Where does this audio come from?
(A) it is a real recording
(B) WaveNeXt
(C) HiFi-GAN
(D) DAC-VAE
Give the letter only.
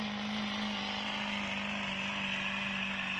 A